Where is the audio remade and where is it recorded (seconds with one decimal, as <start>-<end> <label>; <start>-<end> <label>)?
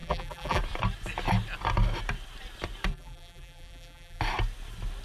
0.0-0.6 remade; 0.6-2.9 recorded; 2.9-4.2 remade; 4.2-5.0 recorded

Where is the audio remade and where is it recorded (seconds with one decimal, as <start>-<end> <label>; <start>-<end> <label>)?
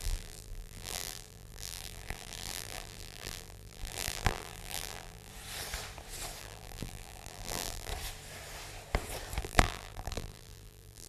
0.0-5.3 remade; 5.3-6.4 recorded; 6.4-7.9 remade; 7.9-9.4 recorded; 9.4-11.1 remade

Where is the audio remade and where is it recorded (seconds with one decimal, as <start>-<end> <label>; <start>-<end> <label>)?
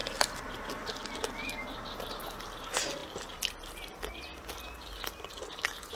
0.0-6.0 recorded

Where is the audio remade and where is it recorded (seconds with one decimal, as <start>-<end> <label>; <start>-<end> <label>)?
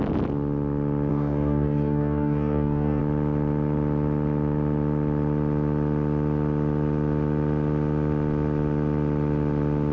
0.0-1.1 recorded; 1.1-3.0 remade; 3.0-9.9 recorded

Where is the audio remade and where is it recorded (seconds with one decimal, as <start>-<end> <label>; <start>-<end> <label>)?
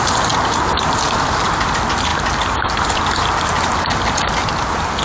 0.0-5.0 recorded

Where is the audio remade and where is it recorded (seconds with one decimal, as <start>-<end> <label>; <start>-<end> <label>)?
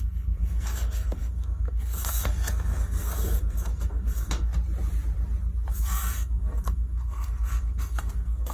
0.0-4.5 remade; 4.5-5.7 recorded; 5.7-8.5 remade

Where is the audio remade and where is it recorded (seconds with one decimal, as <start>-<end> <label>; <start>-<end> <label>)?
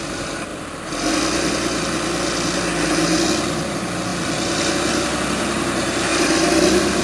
0.0-6.1 recorded; 6.1-7.0 remade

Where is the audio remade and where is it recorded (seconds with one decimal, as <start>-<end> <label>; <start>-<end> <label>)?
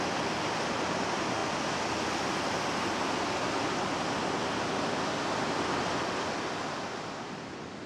0.0-7.9 recorded